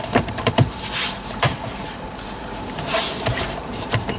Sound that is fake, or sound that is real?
fake